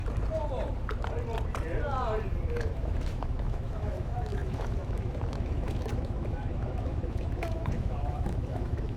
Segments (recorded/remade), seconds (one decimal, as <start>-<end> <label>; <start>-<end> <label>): 0.0-2.5 recorded; 2.5-9.0 remade